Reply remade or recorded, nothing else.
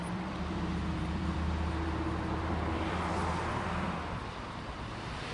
remade